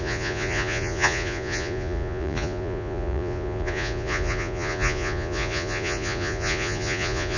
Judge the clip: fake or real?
fake